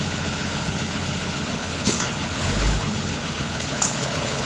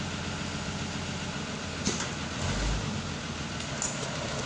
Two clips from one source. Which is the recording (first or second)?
second